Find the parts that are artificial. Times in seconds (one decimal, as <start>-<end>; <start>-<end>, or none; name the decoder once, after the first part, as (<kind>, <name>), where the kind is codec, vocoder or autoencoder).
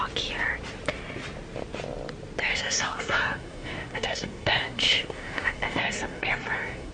2.5-6.9 (codec, SNAC)